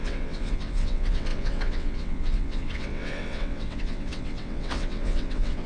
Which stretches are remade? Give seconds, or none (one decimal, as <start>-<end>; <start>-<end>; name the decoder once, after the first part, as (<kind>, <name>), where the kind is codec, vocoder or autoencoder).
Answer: 0.0-5.7 (vocoder, WaveNeXt)